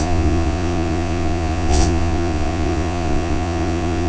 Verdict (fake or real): fake